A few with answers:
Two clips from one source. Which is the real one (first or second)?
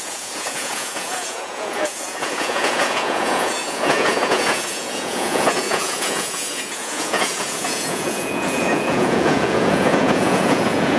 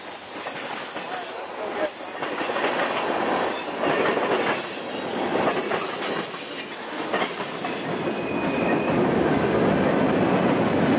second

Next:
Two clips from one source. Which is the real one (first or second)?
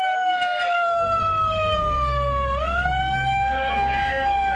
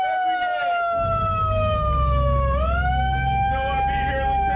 second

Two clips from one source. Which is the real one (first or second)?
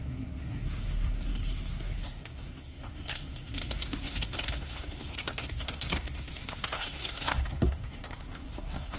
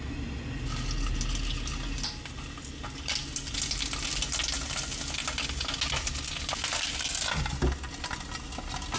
second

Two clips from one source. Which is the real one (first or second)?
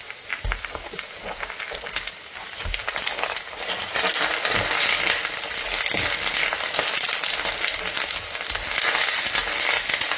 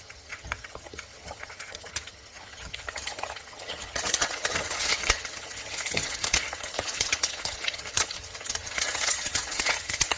first